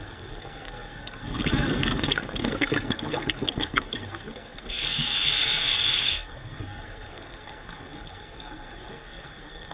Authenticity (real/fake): fake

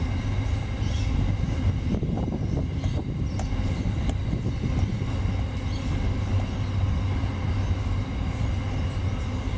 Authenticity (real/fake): real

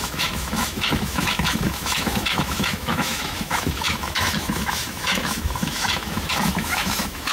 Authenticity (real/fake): fake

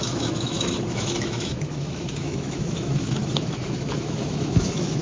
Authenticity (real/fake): fake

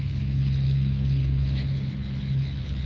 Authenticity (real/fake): fake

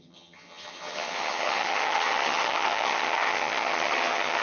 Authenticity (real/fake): fake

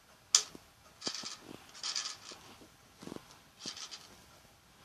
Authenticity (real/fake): real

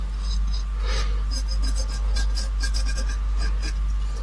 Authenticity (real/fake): real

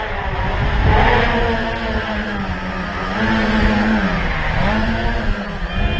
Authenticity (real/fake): real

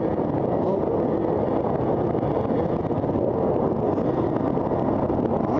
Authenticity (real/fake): real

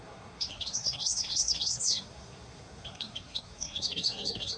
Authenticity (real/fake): fake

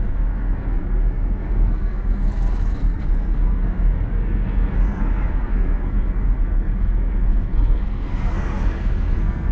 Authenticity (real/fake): fake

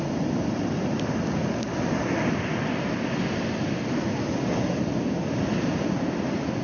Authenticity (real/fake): real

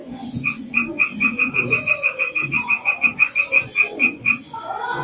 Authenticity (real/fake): fake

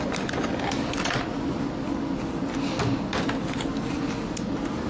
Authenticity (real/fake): real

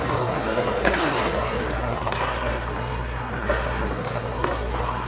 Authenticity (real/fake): fake